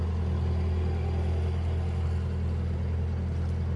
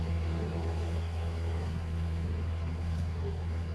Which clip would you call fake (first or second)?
second